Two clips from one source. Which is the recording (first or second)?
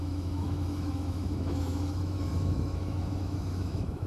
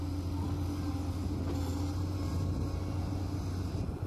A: second